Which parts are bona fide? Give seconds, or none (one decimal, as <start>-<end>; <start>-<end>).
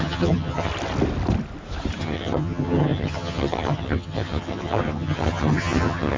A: 0.7-2.0